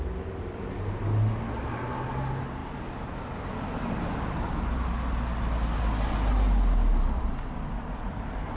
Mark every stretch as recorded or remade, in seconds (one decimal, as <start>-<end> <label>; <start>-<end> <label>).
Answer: 0.0-8.6 recorded